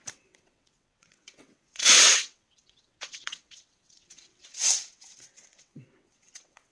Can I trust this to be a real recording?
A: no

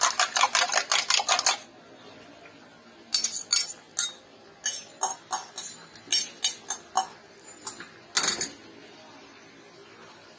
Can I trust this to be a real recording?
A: yes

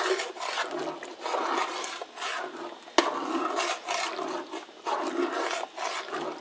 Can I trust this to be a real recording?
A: yes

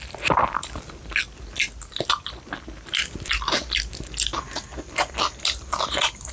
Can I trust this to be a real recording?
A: yes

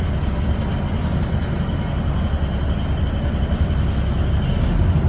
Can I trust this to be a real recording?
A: yes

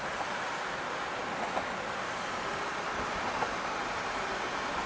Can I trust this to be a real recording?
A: yes